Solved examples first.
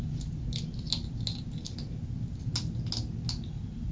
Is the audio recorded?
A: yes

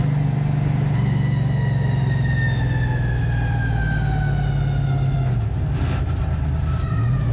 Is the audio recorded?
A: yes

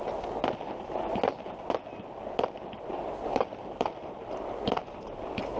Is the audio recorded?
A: yes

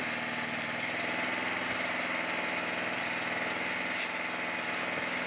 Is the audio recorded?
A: yes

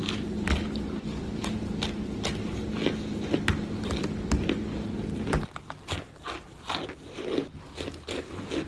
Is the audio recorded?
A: yes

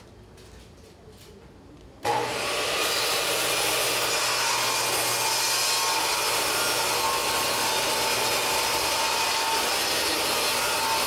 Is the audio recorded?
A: yes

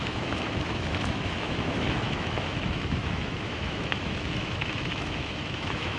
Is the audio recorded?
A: no